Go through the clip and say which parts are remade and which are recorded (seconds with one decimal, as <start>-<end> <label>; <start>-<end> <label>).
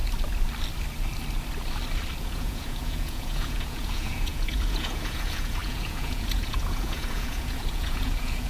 0.0-2.2 recorded; 2.2-8.5 remade